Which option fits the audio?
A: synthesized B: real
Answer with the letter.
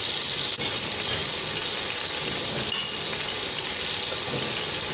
B